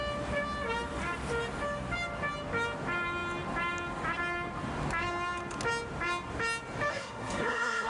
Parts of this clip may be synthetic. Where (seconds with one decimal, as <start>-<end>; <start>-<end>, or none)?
6.9-7.9